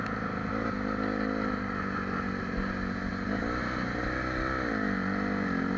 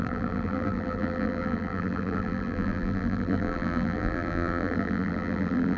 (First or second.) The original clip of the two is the first